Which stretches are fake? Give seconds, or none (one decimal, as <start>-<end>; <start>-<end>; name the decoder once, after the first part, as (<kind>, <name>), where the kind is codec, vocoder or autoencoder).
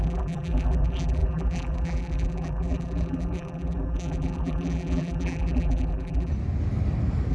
0.0-6.3 (vocoder, BigVGAN v2)